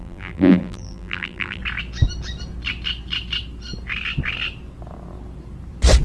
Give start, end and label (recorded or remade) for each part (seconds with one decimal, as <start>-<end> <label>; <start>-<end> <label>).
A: 0.0-1.6 remade; 1.6-6.0 recorded